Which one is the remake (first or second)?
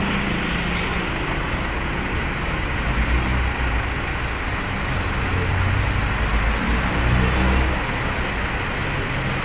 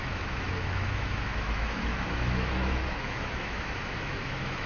second